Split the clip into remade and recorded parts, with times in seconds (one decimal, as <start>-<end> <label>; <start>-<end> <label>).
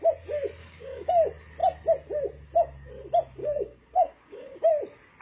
0.0-0.6 recorded; 0.6-1.1 remade; 1.1-3.4 recorded; 3.4-4.7 remade; 4.7-5.2 recorded